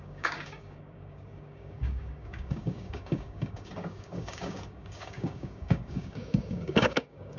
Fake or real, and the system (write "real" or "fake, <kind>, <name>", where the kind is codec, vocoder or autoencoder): fake, codec, DAC